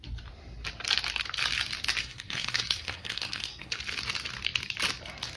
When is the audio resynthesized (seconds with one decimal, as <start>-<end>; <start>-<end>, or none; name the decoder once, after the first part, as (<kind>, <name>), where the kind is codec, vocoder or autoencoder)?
2.0-3.8 (codec, SNAC)